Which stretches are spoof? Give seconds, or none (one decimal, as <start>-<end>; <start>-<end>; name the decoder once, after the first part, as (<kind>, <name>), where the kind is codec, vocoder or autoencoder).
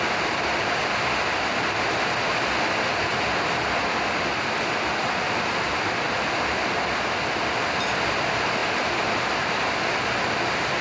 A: none